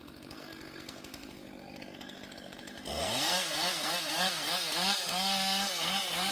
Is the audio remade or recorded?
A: remade